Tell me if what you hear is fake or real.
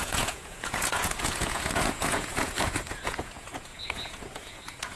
fake